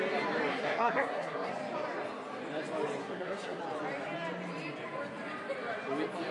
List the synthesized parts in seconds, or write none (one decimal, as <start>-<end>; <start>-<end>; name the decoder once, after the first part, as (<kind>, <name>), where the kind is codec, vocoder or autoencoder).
0.5-1.5 (codec, SNAC); 3.0-3.6